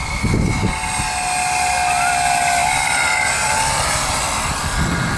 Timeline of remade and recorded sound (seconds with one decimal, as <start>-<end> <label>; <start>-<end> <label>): 0.0-2.6 recorded; 2.6-4.5 remade; 4.5-5.2 recorded